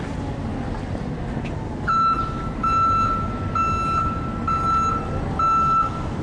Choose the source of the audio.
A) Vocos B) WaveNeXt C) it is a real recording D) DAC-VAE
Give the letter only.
C